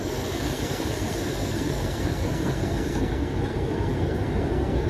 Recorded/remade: remade